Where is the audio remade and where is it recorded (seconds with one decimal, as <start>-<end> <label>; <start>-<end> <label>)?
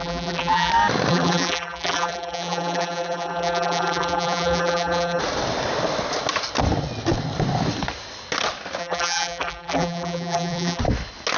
0.0-0.7 remade; 0.7-1.1 recorded; 1.1-5.2 remade; 5.2-8.8 recorded; 8.8-10.8 remade; 10.8-11.4 recorded